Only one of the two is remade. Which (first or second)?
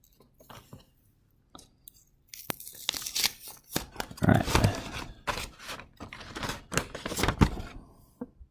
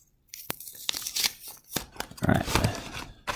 second